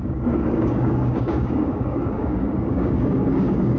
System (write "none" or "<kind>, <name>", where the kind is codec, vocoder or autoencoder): codec, DAC